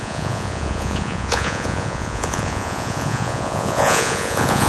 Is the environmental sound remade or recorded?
remade